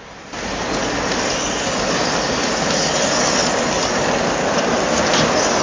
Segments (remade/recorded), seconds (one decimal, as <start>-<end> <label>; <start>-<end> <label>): 0.0-5.6 recorded